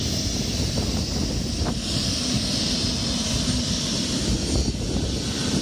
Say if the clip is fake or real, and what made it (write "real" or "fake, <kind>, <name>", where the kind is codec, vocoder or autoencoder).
real